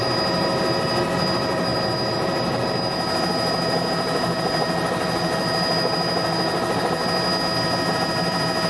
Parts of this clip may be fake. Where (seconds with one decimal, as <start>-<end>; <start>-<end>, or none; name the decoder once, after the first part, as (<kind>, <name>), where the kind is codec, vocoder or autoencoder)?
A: none